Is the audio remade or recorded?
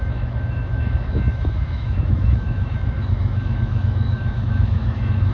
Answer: remade